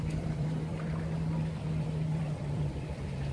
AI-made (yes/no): yes